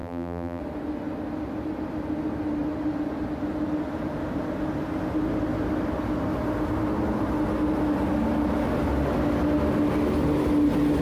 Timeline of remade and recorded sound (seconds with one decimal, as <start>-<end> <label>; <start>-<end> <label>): 0.0-0.6 remade; 0.6-11.0 recorded